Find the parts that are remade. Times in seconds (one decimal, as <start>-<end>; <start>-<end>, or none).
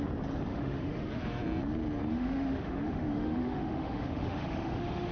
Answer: 0.5-1.1; 2.1-5.1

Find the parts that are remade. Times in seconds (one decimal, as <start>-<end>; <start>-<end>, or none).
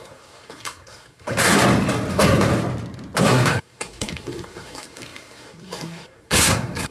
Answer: 0.0-1.6; 2.1-2.5; 3.2-6.9